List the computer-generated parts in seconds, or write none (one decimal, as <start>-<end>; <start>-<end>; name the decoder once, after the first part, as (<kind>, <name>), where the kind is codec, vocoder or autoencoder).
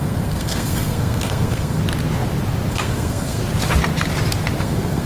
0.0-1.8 (codec, SNAC); 2.7-3.4; 4.6-5.1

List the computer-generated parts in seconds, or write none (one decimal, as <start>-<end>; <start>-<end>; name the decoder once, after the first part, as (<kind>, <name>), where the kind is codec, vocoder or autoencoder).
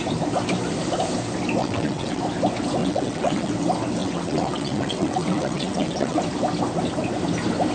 1.6-2.2 (vocoder, WaveNeXt); 2.8-3.5; 4.0-6.2